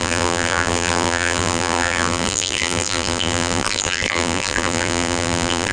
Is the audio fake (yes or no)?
yes